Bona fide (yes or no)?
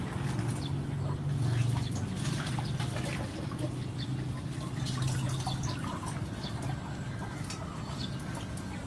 yes